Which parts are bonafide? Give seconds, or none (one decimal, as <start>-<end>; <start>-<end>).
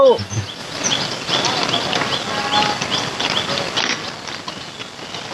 0.0-5.3